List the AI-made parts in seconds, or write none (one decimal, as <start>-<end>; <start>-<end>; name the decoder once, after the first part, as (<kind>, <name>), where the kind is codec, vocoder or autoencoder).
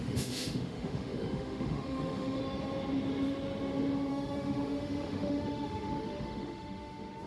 0.0-2.4 (autoencoder, DAC-VAE); 4.1-7.3